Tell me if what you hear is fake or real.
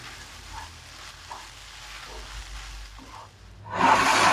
real